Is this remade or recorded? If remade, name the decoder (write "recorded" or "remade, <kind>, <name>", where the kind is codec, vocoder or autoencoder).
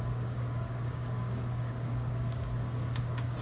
remade, codec, DAC